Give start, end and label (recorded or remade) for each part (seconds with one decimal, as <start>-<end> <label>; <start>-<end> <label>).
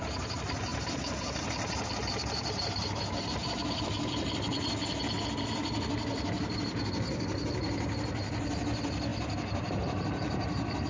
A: 0.0-10.9 recorded